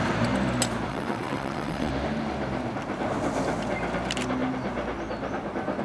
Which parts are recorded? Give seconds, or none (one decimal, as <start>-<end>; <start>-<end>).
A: 0.0-0.9; 1.9-5.8